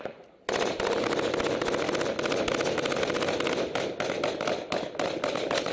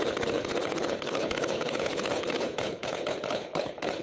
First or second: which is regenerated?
second